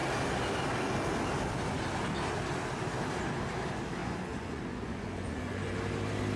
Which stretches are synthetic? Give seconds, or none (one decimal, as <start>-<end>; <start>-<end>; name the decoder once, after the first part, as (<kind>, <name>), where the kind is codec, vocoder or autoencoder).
4.0-5.8 (vocoder, Vocos)